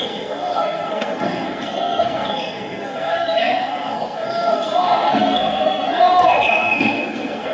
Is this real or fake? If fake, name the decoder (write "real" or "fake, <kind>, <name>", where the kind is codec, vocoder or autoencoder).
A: fake, codec, SNAC